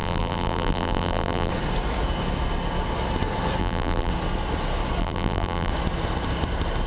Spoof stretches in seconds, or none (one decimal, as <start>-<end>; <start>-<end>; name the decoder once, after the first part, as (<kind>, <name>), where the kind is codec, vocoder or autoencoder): 0.0-1.5 (vocoder, BigVGAN v2); 3.6-4.1; 5.0-5.7